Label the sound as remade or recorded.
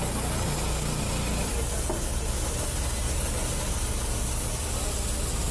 recorded